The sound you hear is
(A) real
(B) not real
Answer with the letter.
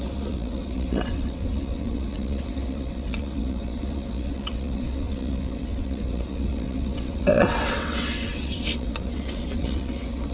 B